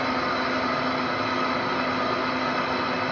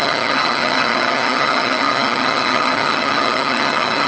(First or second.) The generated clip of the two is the second